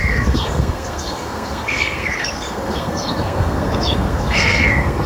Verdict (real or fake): fake